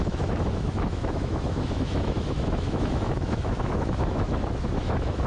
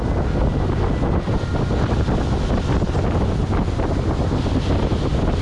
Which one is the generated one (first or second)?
first